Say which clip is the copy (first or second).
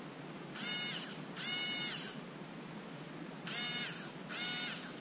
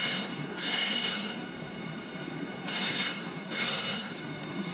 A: second